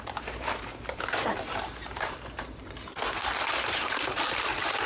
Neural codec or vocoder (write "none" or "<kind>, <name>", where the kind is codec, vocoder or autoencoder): vocoder, BigVGAN v2